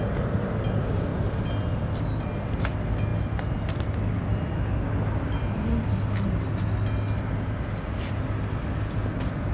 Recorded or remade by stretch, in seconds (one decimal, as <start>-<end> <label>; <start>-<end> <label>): 0.0-9.5 recorded